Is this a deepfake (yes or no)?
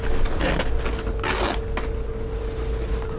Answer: no